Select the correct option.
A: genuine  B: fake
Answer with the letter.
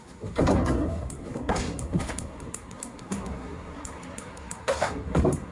B